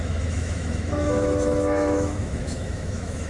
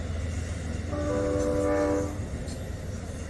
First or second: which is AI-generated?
first